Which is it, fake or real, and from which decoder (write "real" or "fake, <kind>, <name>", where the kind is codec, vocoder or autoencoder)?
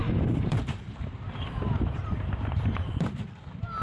fake, vocoder, BigVGAN v2